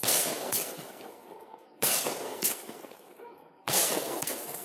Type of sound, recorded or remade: remade